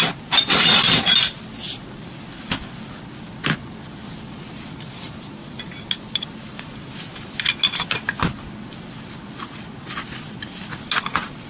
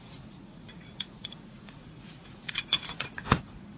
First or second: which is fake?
second